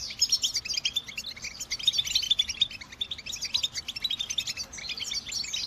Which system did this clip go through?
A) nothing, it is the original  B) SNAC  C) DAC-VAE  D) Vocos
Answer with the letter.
A